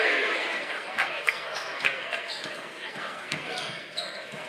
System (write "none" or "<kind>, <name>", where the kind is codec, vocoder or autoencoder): codec, SNAC